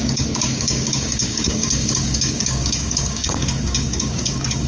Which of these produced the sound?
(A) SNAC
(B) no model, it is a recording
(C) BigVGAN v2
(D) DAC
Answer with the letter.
D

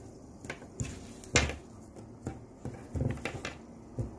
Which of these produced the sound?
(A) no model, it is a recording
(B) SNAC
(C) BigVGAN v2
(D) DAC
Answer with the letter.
A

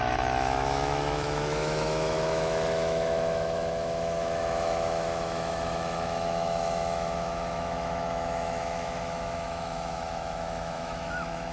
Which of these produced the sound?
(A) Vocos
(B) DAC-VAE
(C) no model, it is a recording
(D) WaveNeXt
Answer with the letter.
B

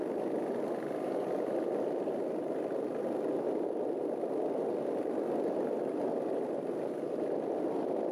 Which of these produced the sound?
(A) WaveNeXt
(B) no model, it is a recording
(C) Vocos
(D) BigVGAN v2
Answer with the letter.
B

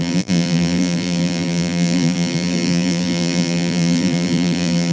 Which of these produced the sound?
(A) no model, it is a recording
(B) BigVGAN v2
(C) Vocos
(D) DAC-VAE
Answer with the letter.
B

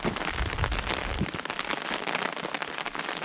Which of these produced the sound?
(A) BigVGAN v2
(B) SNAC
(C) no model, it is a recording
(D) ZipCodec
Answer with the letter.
C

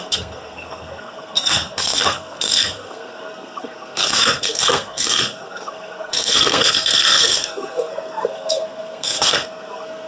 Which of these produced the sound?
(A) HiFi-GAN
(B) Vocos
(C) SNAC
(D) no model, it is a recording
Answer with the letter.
C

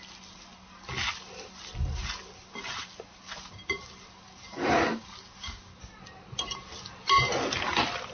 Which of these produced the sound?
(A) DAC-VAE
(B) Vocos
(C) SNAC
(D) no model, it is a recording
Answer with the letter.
D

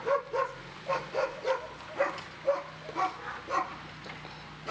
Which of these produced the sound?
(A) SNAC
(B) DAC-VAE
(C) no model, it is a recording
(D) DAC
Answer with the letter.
C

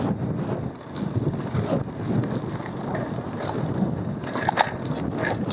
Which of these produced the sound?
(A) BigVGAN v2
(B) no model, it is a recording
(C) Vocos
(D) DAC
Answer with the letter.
B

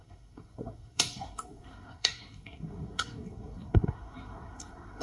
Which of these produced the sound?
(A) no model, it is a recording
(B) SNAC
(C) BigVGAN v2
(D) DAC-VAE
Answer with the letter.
B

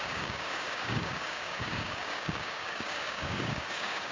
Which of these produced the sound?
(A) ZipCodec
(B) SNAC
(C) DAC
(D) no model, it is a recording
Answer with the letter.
C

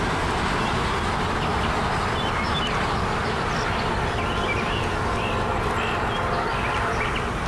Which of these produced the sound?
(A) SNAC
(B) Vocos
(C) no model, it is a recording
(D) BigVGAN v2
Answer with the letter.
C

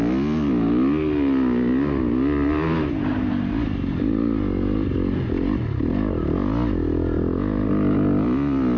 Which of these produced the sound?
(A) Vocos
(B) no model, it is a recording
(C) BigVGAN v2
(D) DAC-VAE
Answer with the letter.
B